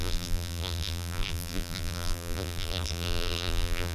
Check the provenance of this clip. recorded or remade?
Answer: remade